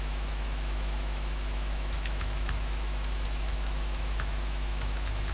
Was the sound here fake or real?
fake